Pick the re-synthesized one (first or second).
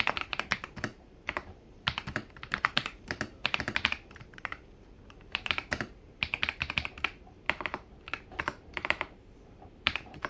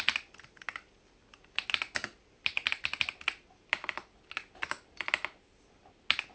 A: first